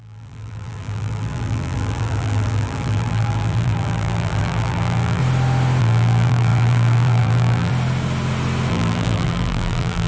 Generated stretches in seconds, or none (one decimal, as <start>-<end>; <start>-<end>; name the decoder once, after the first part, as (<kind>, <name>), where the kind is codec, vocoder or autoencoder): 0.0-5.2 (vocoder, BigVGAN v2); 5.8-7.7; 8.7-10.1